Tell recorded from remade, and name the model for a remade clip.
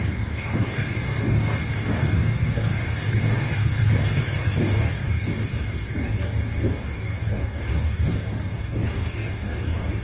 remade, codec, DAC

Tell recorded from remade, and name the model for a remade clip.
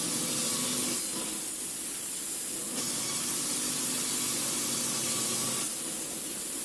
recorded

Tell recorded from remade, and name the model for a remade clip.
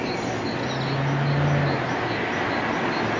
recorded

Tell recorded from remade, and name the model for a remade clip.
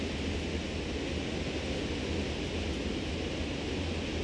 recorded